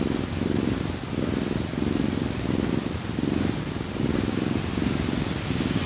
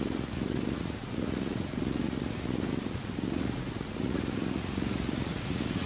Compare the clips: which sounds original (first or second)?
first